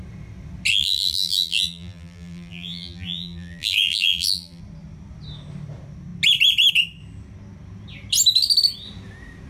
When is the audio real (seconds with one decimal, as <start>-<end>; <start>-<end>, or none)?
0.0-0.7; 4.6-9.5